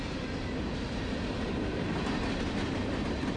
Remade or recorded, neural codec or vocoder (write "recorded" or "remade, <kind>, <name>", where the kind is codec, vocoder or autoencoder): recorded